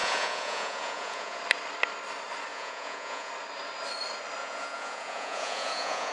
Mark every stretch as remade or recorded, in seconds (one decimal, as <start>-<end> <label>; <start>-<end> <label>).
0.0-1.4 remade; 1.4-2.5 recorded; 2.5-3.3 remade; 3.3-4.4 recorded; 4.4-6.1 remade